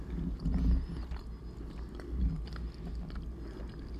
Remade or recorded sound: recorded